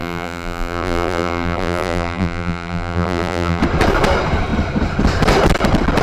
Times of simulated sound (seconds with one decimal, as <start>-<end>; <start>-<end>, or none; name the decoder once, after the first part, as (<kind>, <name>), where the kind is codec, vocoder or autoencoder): 0.0-3.6 (vocoder, BigVGAN v2)